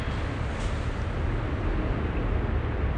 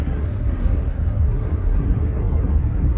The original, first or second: first